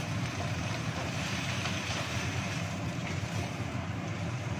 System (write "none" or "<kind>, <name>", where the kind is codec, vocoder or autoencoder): vocoder, BigVGAN v2